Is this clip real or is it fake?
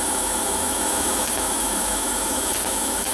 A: fake